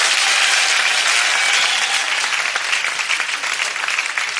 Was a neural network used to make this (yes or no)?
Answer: no